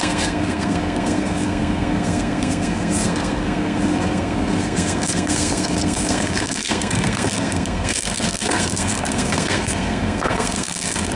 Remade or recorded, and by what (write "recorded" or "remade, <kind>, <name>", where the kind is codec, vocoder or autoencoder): remade, codec, SNAC